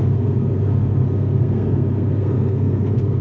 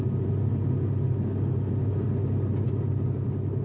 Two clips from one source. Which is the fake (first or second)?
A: first